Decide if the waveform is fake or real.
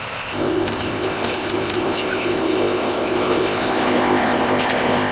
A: fake